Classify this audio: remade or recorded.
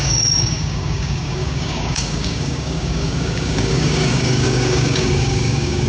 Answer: remade